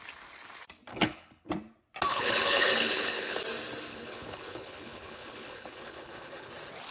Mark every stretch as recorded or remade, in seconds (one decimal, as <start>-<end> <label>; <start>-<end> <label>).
0.0-0.9 recorded; 0.9-1.5 remade; 1.5-2.1 recorded; 2.1-3.4 remade; 3.4-3.9 recorded; 3.9-6.5 remade; 6.5-6.9 recorded